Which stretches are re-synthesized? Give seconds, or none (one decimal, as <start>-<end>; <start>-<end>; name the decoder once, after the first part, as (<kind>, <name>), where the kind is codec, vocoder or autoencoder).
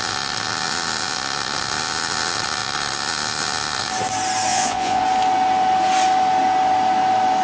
4.5-5.0 (vocoder, Vocos)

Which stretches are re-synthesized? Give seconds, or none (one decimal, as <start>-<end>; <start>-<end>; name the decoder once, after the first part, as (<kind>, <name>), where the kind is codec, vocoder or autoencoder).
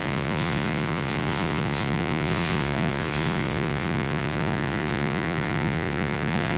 0.0-6.6 (vocoder, Vocos)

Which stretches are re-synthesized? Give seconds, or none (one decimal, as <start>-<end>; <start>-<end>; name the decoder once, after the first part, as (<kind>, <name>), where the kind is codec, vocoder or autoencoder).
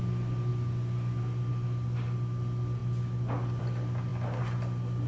none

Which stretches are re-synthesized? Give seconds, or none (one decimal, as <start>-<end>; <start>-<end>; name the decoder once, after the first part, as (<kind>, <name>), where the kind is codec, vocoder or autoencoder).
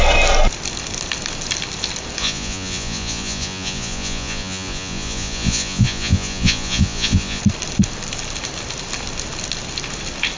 2.2-7.4 (vocoder, Vocos)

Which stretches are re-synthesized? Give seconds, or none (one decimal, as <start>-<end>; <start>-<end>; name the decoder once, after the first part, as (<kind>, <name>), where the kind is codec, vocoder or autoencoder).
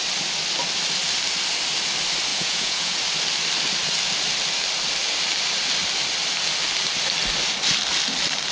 2.3-3.0 (vocoder, Vocos)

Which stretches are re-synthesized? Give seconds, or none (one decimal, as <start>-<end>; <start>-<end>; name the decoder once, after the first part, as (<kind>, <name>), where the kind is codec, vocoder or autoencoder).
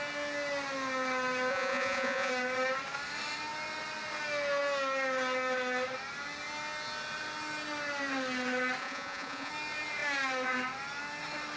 1.5-2.3 (vocoder, Vocos); 8.8-9.5